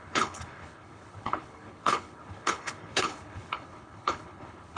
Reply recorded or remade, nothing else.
remade